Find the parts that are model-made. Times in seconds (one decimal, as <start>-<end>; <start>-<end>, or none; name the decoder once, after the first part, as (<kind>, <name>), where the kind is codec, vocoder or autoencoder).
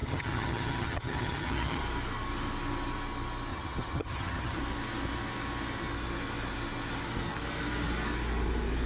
0.0-1.8 (vocoder, HiFi-GAN); 3.5-4.6